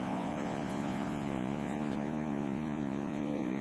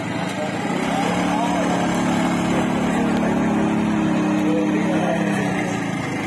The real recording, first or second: second